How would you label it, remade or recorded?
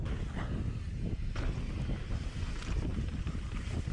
recorded